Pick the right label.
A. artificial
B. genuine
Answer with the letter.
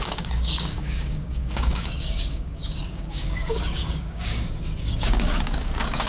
A